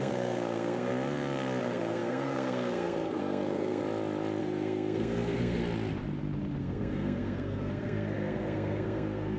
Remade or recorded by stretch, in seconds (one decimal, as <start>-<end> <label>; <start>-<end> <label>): 0.0-0.9 remade; 0.9-1.6 recorded; 1.6-3.8 remade; 3.8-4.4 recorded; 4.4-5.6 remade; 5.6-6.6 recorded; 6.6-9.4 remade